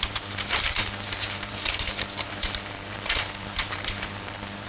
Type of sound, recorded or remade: remade